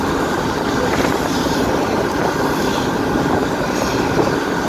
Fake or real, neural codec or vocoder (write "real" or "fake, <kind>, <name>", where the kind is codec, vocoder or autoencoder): real